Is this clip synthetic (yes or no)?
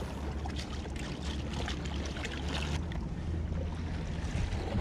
no